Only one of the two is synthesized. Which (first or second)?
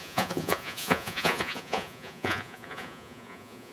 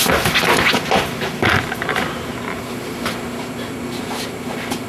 first